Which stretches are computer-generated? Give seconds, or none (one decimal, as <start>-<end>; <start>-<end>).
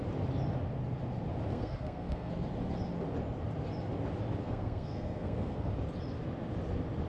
1.5-2.3; 4.4-5.7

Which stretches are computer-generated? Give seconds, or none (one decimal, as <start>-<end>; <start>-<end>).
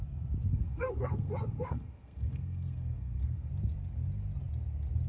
0.5-3.5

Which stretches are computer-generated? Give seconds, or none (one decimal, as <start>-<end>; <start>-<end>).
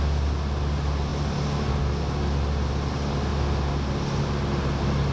none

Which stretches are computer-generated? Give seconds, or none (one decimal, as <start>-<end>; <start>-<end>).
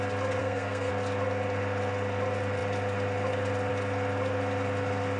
0.4-0.9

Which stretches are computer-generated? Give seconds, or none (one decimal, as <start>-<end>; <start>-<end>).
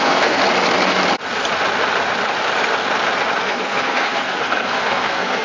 0.0-0.4; 3.4-5.4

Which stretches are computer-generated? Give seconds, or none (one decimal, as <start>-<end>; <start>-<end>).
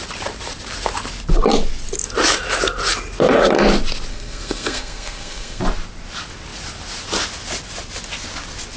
4.1-5.6